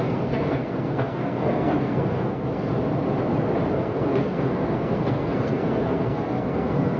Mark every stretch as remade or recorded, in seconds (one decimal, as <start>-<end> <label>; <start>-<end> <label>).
0.0-2.7 remade; 2.7-3.7 recorded; 3.7-7.0 remade